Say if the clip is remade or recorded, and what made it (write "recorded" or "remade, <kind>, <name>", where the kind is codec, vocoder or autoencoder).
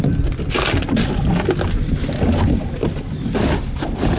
recorded